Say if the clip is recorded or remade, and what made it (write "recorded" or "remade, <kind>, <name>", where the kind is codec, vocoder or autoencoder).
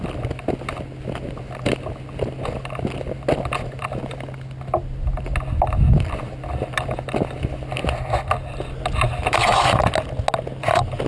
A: recorded